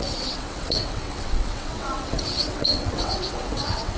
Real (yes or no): no